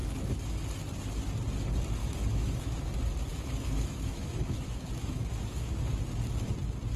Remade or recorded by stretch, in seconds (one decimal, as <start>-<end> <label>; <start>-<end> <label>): 0.0-2.0 recorded; 2.0-2.8 remade; 2.8-3.3 recorded; 3.3-5.7 remade; 5.7-7.0 recorded